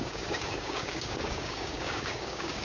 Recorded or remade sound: remade